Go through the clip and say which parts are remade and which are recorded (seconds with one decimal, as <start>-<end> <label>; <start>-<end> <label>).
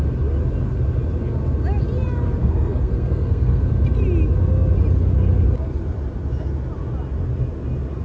0.0-2.4 recorded; 2.4-3.7 remade; 3.7-8.0 recorded